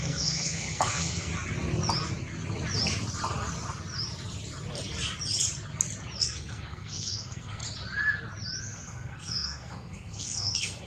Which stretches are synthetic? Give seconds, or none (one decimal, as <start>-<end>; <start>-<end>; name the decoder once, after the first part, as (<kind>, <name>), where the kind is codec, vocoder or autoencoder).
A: 0.0-1.3 (codec, SNAC); 6.2-7.6; 8.6-10.9